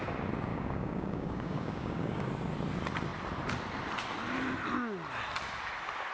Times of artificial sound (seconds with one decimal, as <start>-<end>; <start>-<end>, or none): 0.5-2.3